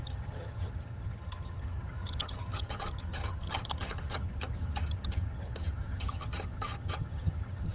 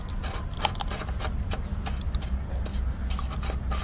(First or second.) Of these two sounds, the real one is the second